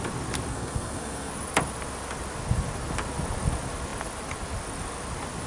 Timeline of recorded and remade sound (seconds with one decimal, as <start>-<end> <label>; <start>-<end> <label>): 0.0-0.5 recorded; 0.5-1.3 remade; 1.3-5.5 recorded